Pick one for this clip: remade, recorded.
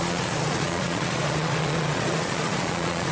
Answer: remade